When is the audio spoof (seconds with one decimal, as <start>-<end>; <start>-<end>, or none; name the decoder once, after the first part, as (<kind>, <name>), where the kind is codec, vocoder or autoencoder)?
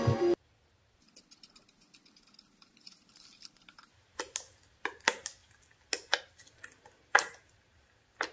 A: none